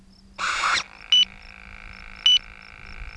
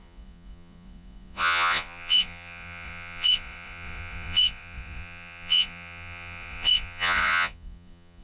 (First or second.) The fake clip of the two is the second